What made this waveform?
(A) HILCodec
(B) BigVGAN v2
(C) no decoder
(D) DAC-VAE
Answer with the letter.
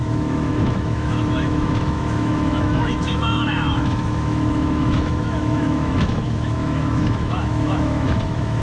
D